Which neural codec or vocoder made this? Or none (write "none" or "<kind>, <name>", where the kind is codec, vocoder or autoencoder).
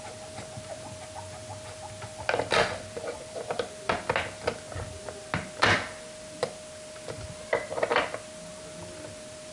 none